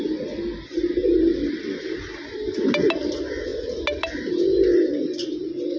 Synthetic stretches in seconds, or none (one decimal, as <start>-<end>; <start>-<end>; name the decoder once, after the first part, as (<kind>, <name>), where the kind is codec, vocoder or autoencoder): none